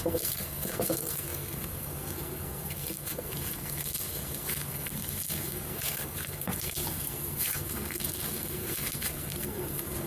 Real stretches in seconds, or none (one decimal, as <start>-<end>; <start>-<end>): none